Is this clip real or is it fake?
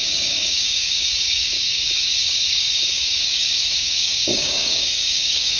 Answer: fake